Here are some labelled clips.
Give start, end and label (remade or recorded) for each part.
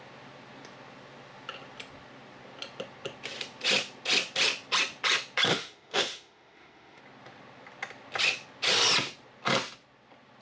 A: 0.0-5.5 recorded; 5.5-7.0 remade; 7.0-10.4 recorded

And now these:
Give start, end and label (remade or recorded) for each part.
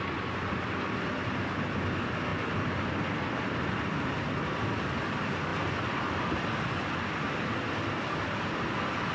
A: 0.0-9.1 recorded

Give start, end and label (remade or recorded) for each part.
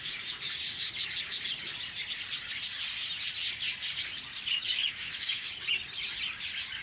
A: 0.0-4.6 recorded; 4.6-5.5 remade; 5.5-6.8 recorded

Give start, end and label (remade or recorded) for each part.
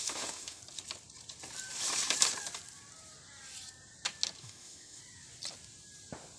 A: 0.0-0.6 remade; 0.6-4.4 recorded; 4.4-5.0 remade; 5.0-6.4 recorded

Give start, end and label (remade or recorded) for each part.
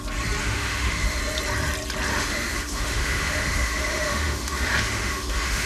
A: 0.0-0.4 recorded; 0.4-1.2 remade; 1.2-2.1 recorded; 2.1-5.7 remade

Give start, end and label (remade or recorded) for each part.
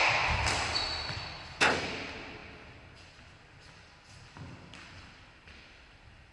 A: 0.0-6.3 recorded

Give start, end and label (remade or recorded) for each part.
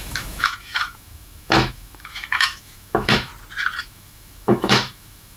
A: 0.0-3.3 remade; 3.3-3.8 recorded; 3.8-5.4 remade